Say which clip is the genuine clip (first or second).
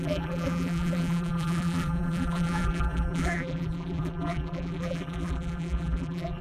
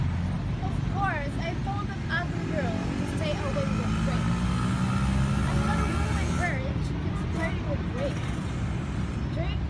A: second